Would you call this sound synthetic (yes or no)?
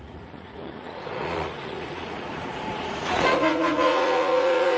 yes